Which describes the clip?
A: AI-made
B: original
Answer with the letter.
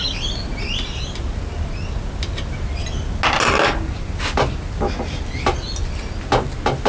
B